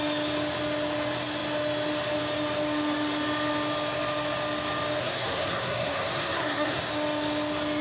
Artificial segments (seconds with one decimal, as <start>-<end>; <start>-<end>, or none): 5.0-6.8